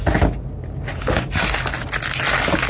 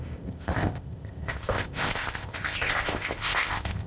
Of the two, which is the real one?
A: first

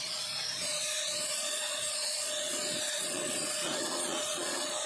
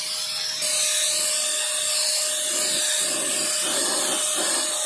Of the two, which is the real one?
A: second